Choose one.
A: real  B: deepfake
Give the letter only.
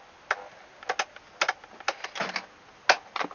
A